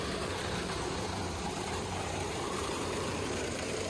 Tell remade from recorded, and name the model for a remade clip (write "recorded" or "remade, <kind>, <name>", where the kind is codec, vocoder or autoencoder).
remade, vocoder, BigVGAN v2